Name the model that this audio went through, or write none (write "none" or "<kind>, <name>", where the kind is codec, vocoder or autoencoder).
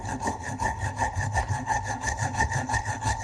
codec, HILCodec